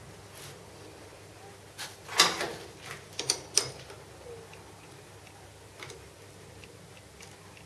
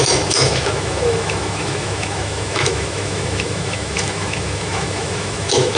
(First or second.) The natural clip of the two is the first